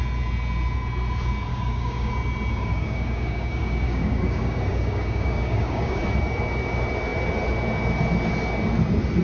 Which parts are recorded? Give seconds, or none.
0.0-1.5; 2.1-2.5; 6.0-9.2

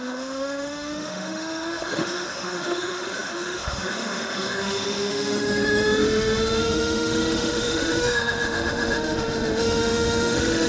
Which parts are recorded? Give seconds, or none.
none

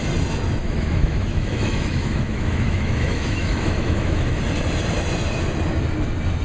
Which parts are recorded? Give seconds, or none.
0.0-0.6; 4.4-6.4

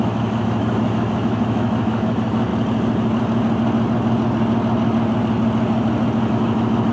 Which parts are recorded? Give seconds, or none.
2.5-6.3

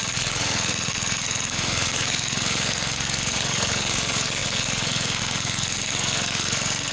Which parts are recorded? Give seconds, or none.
none